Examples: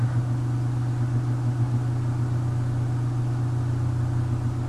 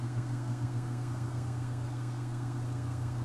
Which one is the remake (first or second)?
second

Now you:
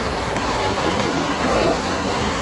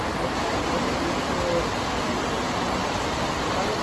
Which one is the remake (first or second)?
first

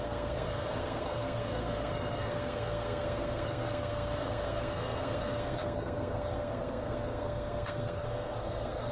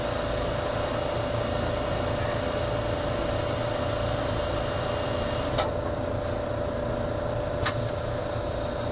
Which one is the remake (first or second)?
first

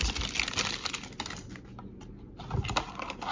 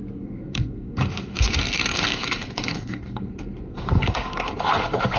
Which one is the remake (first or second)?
second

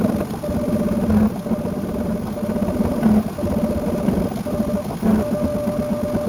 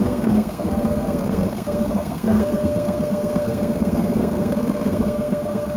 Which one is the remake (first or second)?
second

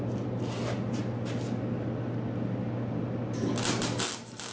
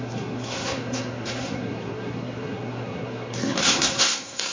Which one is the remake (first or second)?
second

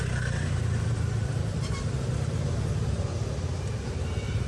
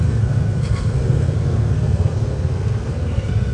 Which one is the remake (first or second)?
second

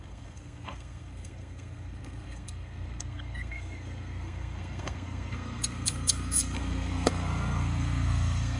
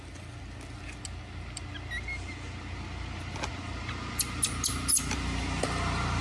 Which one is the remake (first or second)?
first